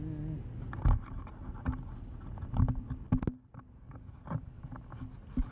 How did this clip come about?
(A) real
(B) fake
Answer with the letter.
A